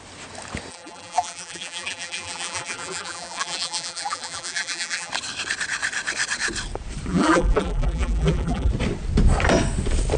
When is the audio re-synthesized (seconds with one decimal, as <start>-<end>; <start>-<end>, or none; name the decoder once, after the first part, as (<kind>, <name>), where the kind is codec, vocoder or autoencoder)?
0.7-5.1 (vocoder, BigVGAN v2); 7.1-8.7